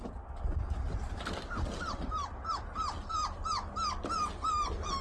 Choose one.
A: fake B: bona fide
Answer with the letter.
B